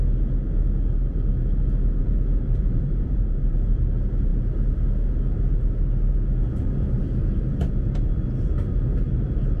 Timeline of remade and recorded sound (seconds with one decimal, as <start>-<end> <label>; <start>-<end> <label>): 0.0-2.0 recorded; 2.0-3.9 remade; 3.9-9.6 recorded